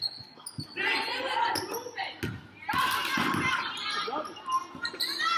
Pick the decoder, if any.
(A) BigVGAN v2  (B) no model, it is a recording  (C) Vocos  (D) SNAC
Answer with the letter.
B